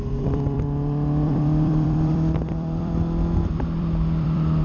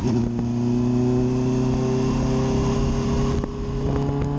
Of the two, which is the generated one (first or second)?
first